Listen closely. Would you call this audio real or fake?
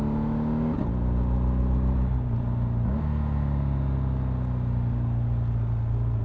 real